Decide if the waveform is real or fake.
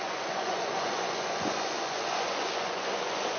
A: fake